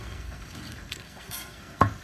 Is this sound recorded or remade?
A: remade